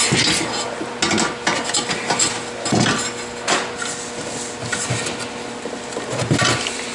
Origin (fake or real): real